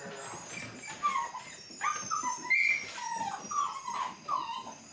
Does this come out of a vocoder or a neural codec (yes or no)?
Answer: no